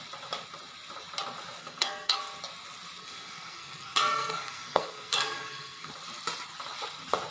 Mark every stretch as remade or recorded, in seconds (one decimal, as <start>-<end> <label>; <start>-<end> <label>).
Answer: 0.0-1.6 recorded; 1.6-2.2 remade; 2.2-3.0 recorded; 3.0-5.9 remade; 5.9-7.3 recorded